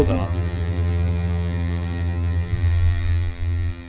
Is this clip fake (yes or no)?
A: yes